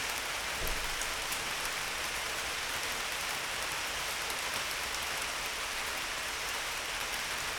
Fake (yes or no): no